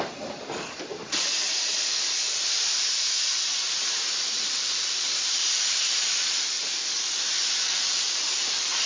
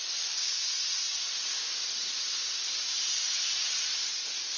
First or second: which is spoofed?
first